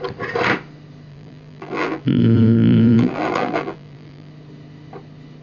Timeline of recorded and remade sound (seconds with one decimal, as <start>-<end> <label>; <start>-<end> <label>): 0.0-1.1 recorded; 1.1-4.3 remade; 4.3-5.4 recorded